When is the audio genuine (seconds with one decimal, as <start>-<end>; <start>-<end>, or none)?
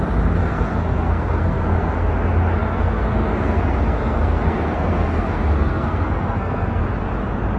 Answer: 0.0-0.4; 2.1-2.6; 6.8-7.6